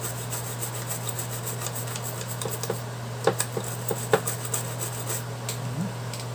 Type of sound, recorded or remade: recorded